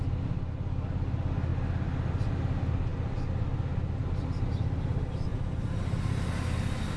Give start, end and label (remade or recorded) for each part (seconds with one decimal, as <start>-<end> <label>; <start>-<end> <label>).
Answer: 0.0-7.0 recorded